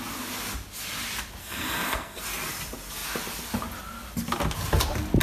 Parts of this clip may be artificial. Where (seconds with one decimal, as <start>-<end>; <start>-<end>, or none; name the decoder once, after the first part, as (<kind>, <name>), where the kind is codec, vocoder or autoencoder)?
1.4-2.2 (codec, SNAC)